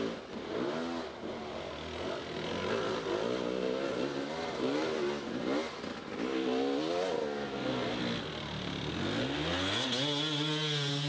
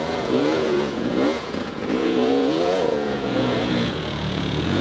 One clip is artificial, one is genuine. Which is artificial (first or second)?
second